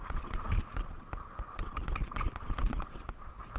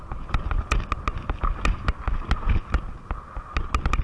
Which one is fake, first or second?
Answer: first